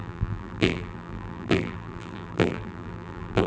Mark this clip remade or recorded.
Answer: remade